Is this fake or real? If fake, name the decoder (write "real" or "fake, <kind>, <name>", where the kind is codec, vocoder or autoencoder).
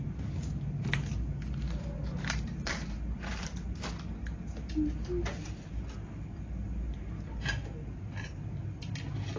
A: real